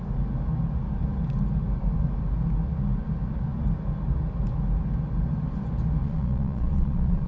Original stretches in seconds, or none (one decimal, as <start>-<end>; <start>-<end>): 0.0-6.0